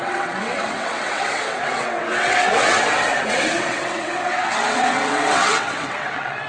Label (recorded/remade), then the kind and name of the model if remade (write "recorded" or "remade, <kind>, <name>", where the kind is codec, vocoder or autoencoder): remade, vocoder, WaveNeXt